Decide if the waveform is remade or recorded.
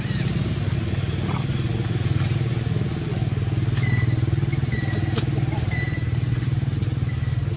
recorded